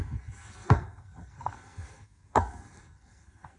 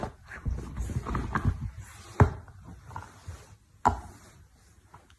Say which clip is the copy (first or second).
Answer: first